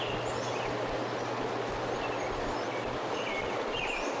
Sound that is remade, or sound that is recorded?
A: recorded